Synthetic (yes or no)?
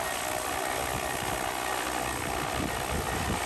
no